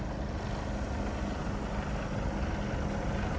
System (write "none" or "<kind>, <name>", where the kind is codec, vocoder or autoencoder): none